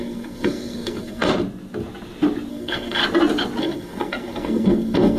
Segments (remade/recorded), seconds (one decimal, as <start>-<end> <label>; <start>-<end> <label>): 0.0-1.3 remade; 1.3-2.5 recorded; 2.5-3.0 remade; 3.0-3.6 recorded; 3.6-5.2 remade